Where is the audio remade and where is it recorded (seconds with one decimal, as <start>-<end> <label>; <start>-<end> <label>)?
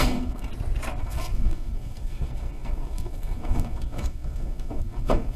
0.0-0.5 remade; 0.5-1.0 recorded; 1.0-5.4 remade